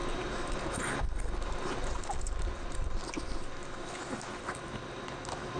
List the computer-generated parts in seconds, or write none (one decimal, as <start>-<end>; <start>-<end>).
0.0-0.9; 1.8-3.2